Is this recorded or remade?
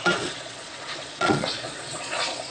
remade